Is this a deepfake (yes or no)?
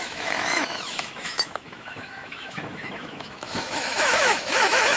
yes